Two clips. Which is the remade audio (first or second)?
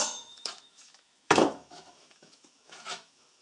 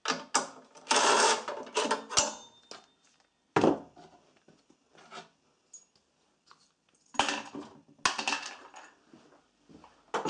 first